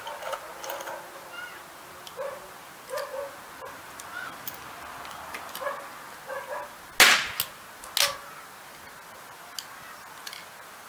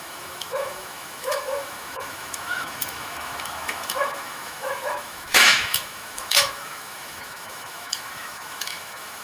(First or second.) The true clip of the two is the first